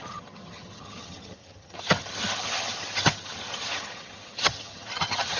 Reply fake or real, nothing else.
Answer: fake